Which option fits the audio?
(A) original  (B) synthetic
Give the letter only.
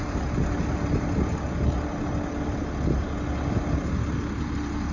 A